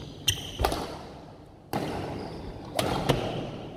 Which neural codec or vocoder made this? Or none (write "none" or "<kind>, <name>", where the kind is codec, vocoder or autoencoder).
none